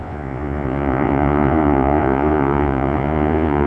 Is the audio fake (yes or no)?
yes